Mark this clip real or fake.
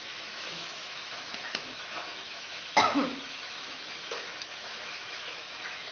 fake